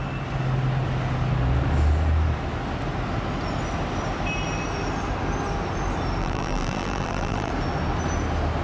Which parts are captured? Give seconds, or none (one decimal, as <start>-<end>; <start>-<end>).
0.0-6.2; 7.5-8.6